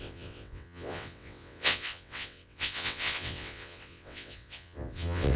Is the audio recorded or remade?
remade